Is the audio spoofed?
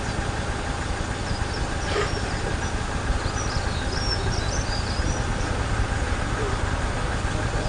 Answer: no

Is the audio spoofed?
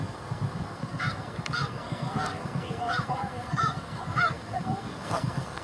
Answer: yes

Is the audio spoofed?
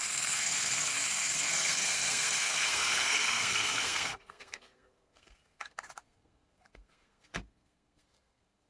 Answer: yes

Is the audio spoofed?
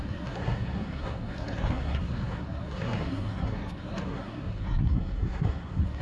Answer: yes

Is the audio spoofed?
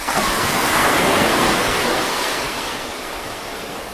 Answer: yes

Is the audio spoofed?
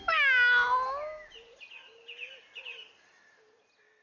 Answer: no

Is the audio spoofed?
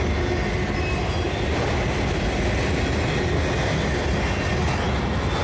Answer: no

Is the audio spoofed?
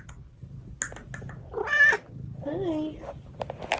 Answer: no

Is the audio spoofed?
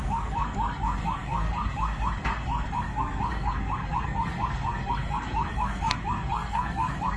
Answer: yes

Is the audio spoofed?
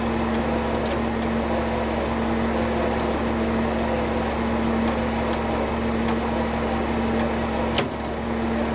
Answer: no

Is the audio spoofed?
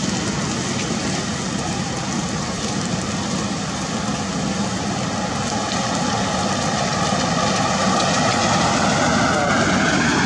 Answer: no